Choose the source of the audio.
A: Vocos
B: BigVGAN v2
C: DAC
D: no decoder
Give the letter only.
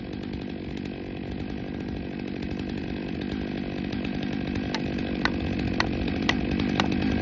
B